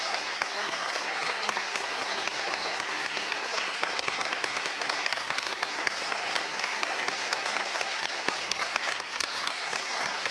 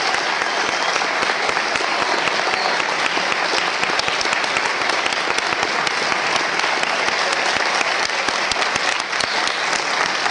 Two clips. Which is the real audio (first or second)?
second